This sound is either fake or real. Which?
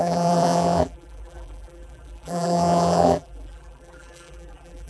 fake